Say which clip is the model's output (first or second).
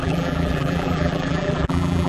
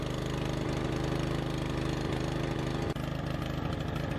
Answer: first